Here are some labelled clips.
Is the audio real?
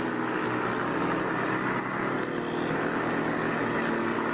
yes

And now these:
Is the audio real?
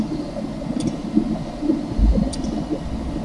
yes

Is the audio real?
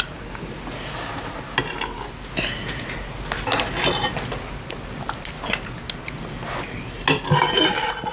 yes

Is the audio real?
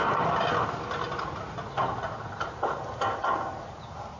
yes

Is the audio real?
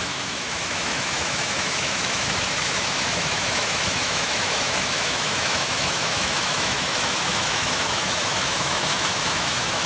no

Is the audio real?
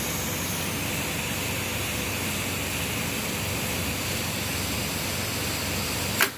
no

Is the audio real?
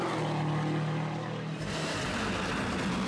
yes